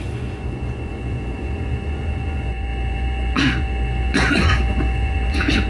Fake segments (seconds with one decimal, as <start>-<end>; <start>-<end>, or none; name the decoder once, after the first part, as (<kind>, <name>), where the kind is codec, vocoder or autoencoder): 0.0-5.7 (vocoder, Vocos)